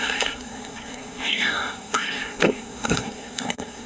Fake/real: fake